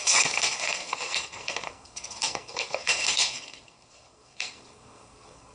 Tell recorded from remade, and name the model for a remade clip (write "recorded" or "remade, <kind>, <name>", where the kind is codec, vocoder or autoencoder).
remade, codec, SNAC